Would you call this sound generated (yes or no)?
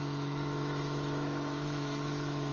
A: yes